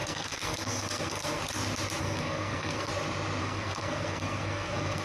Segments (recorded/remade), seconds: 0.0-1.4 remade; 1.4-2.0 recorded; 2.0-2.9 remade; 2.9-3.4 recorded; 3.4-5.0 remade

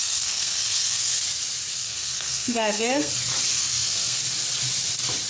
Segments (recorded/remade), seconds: 0.0-1.2 remade; 1.2-1.7 recorded; 1.7-3.1 remade; 3.1-3.5 recorded; 3.5-4.2 remade; 4.2-5.3 recorded

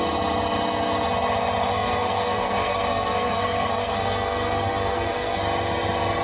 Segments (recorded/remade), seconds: 0.0-1.7 recorded; 1.7-5.4 remade; 5.4-6.2 recorded

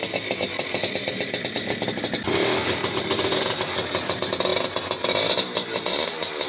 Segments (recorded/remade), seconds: 0.0-6.5 recorded

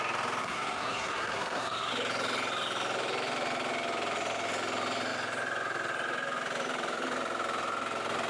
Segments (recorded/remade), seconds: 0.0-0.4 recorded; 0.4-1.9 remade; 1.9-8.3 recorded